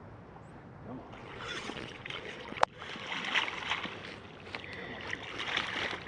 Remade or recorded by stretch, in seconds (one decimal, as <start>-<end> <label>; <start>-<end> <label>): 0.0-1.2 recorded; 1.2-2.7 remade; 2.7-6.1 recorded